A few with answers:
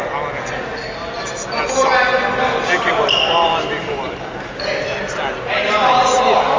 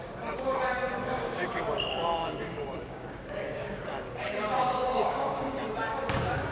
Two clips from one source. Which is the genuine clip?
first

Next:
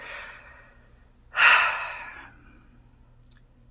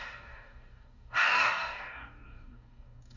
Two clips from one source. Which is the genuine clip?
first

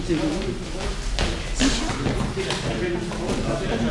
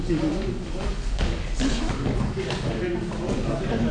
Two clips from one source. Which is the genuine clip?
first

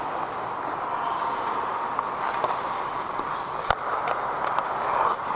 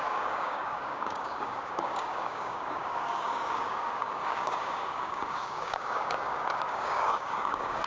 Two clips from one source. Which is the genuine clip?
first